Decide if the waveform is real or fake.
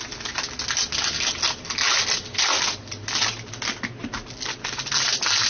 real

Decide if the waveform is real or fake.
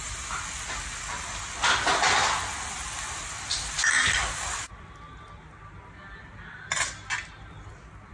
real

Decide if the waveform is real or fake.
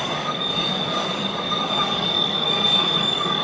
fake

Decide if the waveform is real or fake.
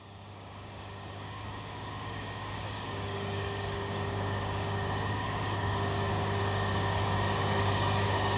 fake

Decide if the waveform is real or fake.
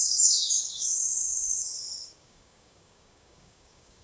fake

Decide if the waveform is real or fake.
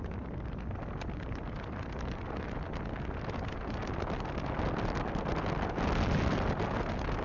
real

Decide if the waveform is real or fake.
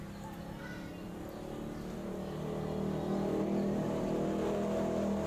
real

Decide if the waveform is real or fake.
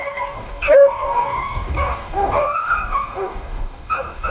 fake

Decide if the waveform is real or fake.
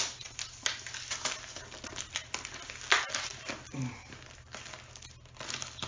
real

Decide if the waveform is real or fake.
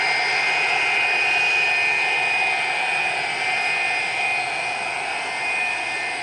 real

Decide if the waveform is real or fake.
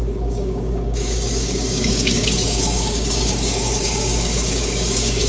fake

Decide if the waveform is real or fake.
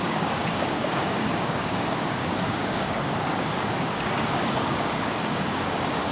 fake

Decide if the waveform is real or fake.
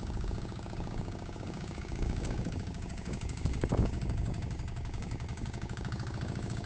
fake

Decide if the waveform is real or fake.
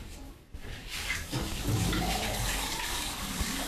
fake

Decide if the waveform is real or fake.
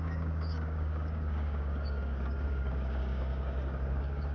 fake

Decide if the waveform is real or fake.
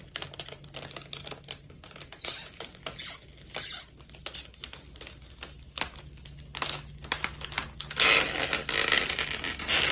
real